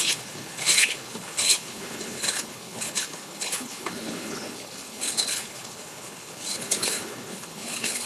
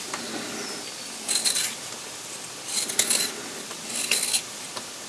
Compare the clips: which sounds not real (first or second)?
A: first